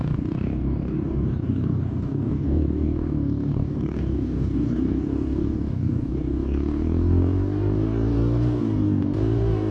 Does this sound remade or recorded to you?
remade